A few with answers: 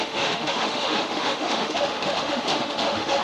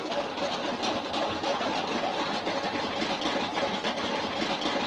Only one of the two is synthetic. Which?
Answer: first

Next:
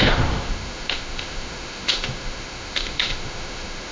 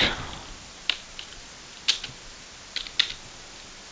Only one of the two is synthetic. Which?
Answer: first